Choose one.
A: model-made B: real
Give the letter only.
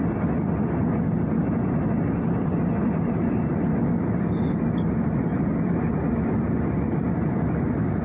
B